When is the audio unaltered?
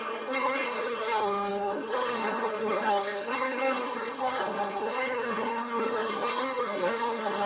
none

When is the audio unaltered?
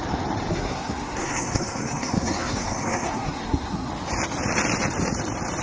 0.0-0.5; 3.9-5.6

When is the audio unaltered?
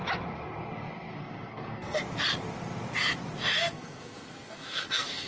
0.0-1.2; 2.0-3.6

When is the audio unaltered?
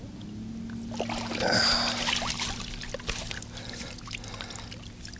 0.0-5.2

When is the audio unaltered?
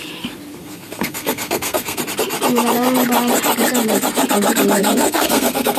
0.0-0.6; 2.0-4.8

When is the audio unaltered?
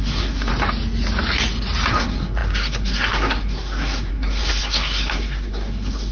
0.5-1.9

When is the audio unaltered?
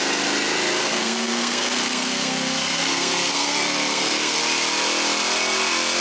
0.0-0.8; 4.4-6.0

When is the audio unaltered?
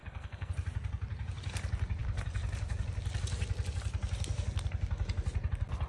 0.5-5.9